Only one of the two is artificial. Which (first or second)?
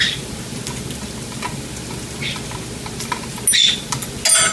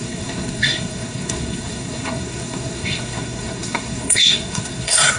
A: second